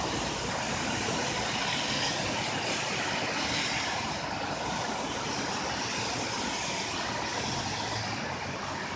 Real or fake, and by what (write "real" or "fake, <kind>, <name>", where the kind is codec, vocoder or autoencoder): real